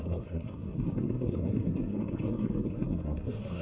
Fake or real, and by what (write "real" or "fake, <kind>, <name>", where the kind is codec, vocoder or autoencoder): fake, codec, SNAC